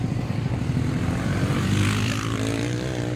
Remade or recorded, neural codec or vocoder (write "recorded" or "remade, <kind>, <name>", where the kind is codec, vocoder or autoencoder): remade, vocoder, BigVGAN v2